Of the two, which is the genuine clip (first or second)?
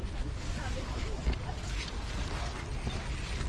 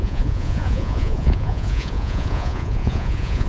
first